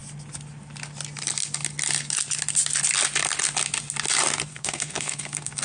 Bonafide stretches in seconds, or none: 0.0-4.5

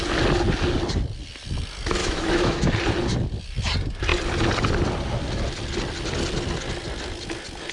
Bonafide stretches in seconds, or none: 0.0-2.0; 2.7-7.7

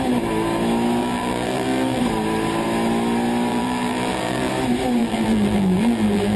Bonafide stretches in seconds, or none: 0.0-1.0; 2.0-3.5; 4.5-5.0

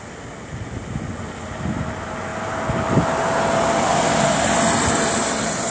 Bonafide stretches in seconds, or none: 0.0-5.7

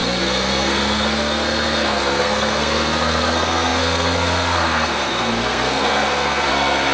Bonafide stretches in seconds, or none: none

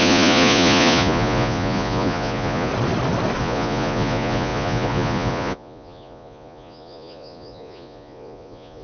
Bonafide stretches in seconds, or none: 2.7-3.4